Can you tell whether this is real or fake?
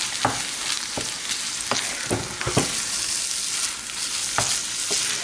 real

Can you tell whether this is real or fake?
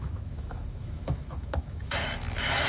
fake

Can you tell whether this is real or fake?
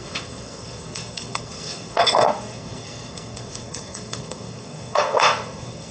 fake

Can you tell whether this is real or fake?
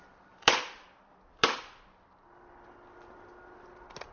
real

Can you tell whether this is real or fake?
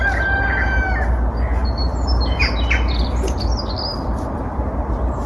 real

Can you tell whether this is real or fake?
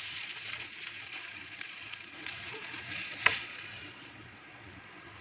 fake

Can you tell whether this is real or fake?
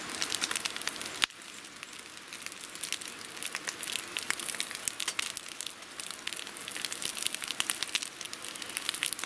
real